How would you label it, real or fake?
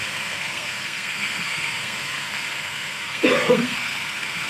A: fake